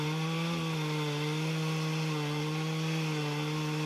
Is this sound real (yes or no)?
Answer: no